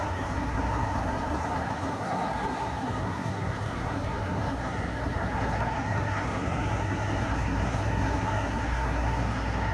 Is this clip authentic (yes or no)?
no